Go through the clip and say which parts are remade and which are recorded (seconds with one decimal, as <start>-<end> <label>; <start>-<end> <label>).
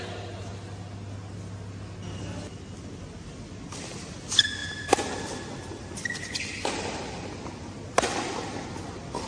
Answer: 0.0-9.3 recorded